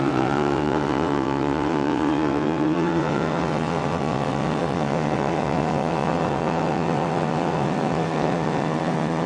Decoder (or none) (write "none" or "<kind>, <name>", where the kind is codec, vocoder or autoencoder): vocoder, WaveNeXt